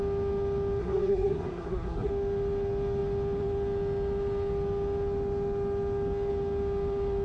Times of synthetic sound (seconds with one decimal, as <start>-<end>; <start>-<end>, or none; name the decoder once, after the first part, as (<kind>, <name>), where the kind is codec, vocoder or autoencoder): 0.8-2.1 (codec, SNAC)